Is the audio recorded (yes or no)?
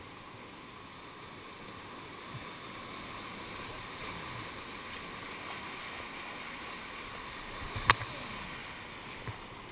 yes